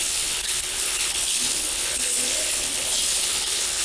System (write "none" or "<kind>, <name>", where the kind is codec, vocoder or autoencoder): codec, HILCodec